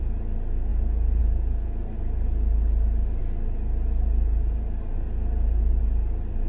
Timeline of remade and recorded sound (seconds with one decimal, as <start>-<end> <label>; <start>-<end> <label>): 0.0-6.5 recorded